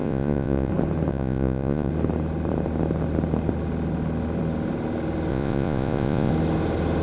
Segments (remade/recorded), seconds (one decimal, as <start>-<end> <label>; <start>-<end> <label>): 0.0-0.7 remade; 0.7-1.1 recorded; 1.1-1.9 remade; 1.9-5.3 recorded; 5.3-6.3 remade; 6.3-7.0 recorded